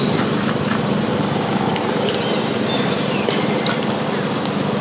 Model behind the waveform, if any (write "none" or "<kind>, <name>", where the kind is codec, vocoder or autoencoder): none